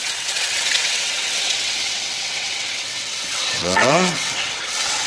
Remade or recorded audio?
remade